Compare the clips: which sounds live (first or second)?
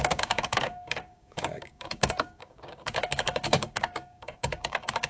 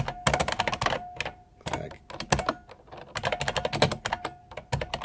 second